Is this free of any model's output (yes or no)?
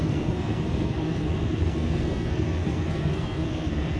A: no